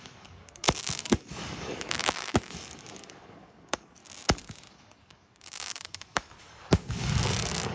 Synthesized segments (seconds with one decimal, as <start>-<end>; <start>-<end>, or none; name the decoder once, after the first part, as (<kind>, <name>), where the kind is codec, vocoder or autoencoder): 0.0-4.0 (codec, DAC); 4.7-7.7